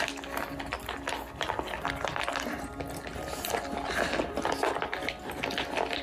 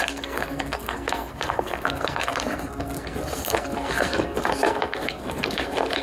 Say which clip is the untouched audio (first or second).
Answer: first